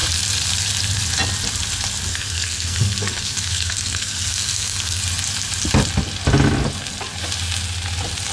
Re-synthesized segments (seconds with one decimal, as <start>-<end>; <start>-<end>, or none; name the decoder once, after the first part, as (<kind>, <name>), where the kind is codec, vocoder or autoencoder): 2.1-5.0 (codec, SNAC)